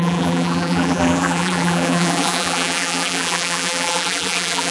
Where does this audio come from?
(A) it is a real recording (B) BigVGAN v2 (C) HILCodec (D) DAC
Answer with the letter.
B